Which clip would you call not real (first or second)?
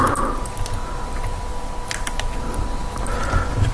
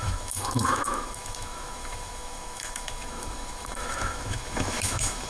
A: second